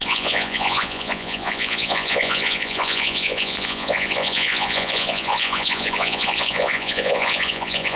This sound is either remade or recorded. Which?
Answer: remade